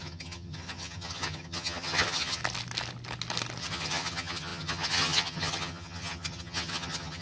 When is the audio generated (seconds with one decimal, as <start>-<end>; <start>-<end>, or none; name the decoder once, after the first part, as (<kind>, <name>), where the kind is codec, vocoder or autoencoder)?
0.0-2.4 (vocoder, HiFi-GAN); 3.6-7.2